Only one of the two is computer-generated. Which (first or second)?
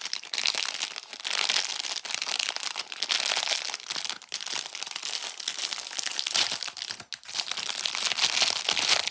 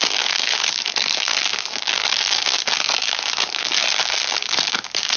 second